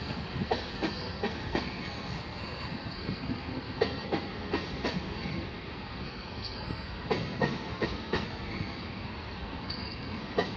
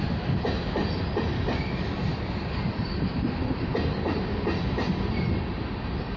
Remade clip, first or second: first